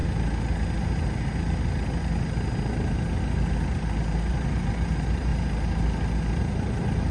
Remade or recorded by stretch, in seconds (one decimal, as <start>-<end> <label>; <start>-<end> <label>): 0.0-4.3 recorded; 4.3-5.3 remade; 5.3-6.4 recorded; 6.4-7.1 remade